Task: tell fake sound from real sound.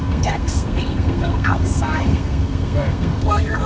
fake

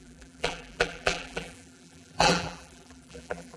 fake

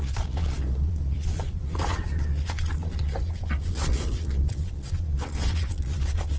fake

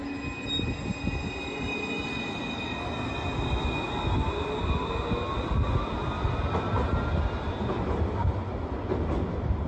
real